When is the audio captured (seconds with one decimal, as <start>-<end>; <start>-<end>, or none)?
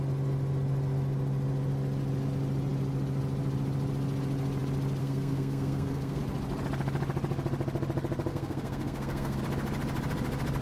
0.0-5.0; 6.2-8.3; 9.4-10.6